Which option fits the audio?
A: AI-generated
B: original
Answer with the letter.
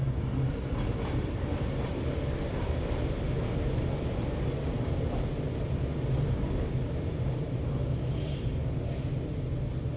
B